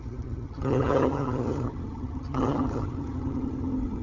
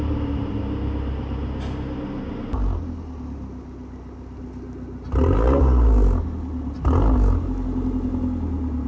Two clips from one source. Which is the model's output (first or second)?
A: first